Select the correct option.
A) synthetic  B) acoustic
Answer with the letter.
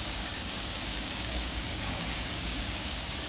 A